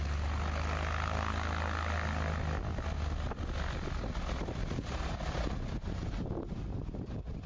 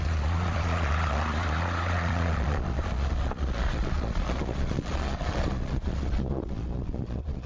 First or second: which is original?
first